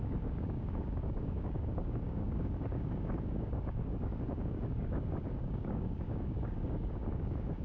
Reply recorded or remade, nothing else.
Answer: remade